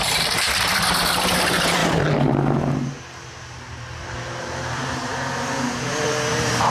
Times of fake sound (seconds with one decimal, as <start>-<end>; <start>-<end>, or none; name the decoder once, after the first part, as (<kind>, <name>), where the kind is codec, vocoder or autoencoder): 0.0-1.8 (vocoder, BigVGAN v2); 4.4-5.1; 6.3-6.7